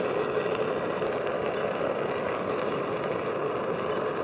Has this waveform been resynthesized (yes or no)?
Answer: no